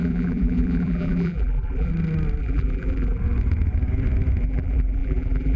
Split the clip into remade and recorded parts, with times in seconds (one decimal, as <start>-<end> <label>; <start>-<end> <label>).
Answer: 0.0-1.9 remade; 1.9-2.4 recorded; 2.4-3.2 remade; 3.2-4.4 recorded; 4.4-5.6 remade